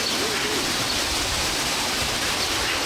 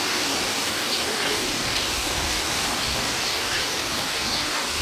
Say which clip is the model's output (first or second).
second